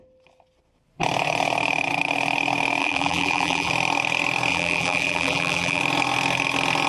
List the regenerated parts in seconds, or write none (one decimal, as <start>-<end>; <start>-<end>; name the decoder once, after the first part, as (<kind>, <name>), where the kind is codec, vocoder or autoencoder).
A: 2.8-3.7 (vocoder, BigVGAN v2); 4.5-5.8

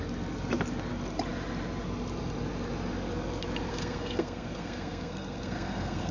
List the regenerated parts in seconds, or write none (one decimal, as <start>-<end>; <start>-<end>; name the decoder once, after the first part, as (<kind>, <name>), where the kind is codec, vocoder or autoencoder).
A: 3.7-6.1 (codec, SNAC)

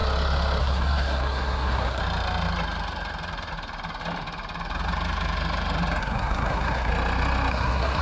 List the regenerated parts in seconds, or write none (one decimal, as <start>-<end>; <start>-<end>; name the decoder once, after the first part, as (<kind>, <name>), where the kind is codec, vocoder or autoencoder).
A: 0.6-2.0 (codec, SNAC); 6.0-6.9; 7.5-8.0

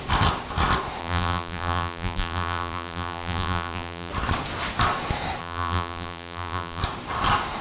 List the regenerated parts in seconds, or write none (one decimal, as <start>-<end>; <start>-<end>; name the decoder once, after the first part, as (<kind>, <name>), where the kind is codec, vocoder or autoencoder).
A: 1.0-4.1 (vocoder, BigVGAN v2); 5.4-6.8

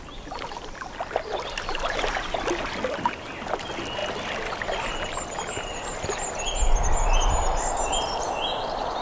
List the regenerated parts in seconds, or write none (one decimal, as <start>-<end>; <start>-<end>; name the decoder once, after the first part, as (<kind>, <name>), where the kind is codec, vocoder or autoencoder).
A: none